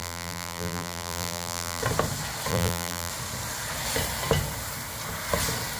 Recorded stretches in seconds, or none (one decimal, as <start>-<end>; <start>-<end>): 1.8-2.5; 3.1-5.8